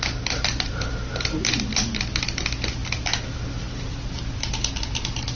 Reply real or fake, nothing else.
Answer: real